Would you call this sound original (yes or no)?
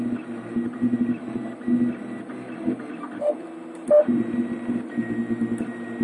yes